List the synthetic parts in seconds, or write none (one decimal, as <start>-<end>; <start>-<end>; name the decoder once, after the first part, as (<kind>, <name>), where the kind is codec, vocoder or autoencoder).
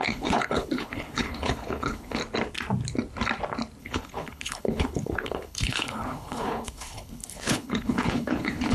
0.0-2.2 (codec, HILCodec); 3.8-8.7